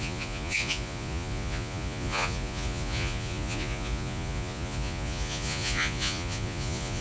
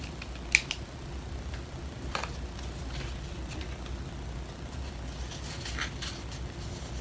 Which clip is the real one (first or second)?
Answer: second